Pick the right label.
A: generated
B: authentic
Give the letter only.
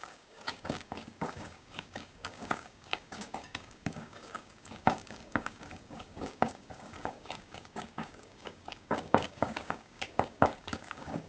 A